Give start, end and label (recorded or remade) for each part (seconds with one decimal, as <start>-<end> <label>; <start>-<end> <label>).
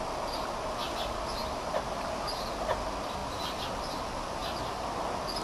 0.0-5.4 recorded